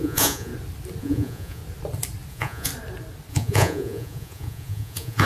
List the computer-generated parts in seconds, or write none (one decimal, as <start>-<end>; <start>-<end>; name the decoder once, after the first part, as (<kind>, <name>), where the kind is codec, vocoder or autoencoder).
0.0-0.5 (vocoder, Vocos); 1.0-1.6; 2.3-2.7; 3.3-5.3